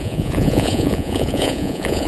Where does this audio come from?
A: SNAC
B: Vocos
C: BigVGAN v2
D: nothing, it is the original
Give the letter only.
B